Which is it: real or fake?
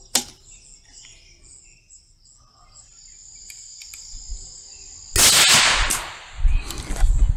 real